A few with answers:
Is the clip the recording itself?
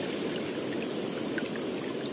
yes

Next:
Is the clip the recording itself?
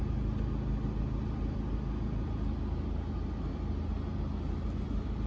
yes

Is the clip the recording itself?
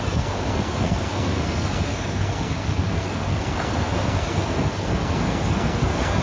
no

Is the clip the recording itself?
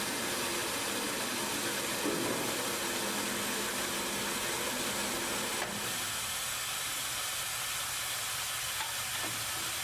yes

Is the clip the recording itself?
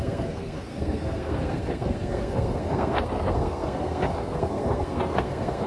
no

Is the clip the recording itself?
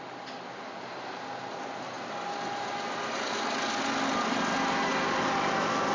yes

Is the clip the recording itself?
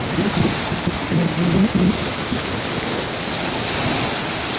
yes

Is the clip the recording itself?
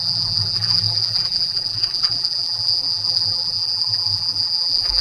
no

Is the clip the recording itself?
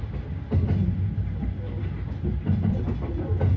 yes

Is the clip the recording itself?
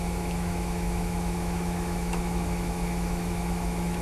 no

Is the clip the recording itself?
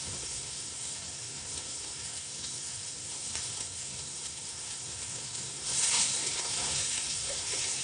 no